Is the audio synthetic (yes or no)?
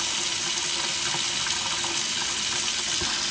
no